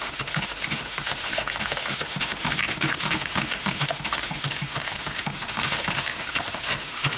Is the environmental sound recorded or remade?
remade